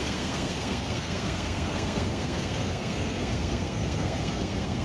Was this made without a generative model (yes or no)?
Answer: no